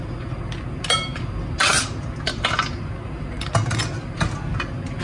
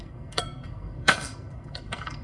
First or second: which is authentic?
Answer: first